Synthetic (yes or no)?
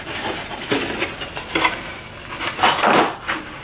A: yes